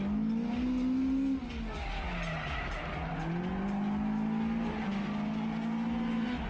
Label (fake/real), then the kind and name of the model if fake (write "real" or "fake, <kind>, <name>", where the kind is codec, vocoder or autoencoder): real